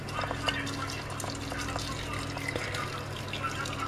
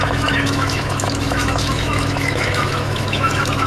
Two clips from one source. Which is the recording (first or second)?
first